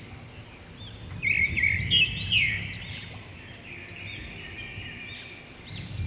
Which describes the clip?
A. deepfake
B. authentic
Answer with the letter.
B